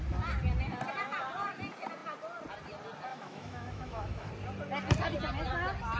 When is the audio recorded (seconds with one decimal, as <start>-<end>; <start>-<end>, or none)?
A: 0.0-3.1; 4.3-6.0